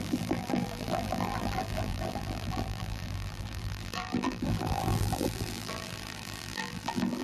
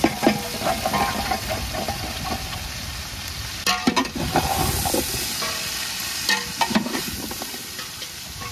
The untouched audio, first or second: second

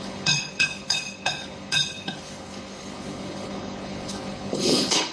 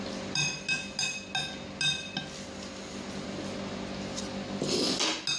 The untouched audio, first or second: second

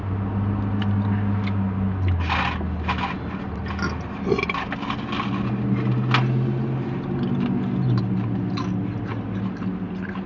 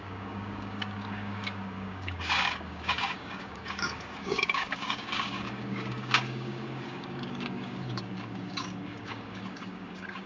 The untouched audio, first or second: first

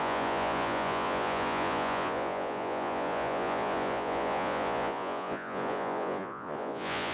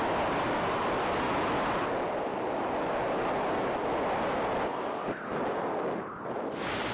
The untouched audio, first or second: second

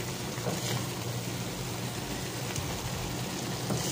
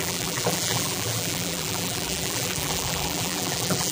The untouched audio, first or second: first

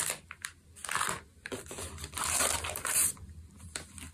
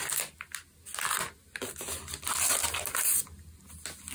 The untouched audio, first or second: second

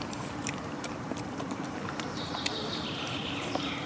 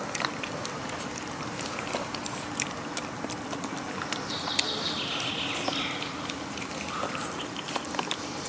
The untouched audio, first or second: second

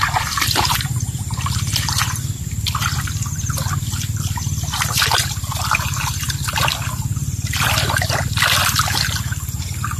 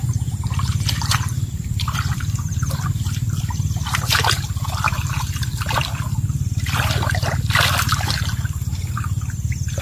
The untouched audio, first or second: first